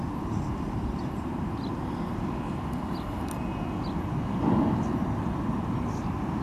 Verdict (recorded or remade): recorded